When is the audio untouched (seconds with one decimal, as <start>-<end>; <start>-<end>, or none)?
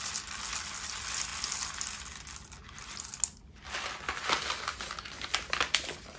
0.0-6.2